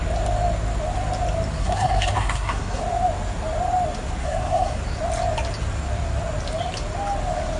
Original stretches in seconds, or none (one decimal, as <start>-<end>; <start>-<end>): 0.0-1.6; 2.8-4.2; 4.8-7.6